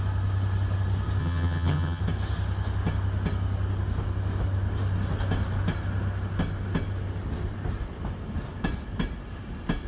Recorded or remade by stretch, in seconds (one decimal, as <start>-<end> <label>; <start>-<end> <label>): 0.0-1.2 recorded; 1.2-2.0 remade; 2.0-9.9 recorded